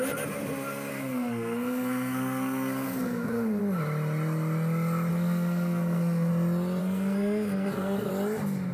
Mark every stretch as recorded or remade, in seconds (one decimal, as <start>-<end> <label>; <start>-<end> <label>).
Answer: 0.0-0.9 recorded; 0.9-3.6 remade; 3.6-5.1 recorded; 5.1-6.3 remade; 6.3-6.8 recorded; 6.8-8.1 remade; 8.1-8.7 recorded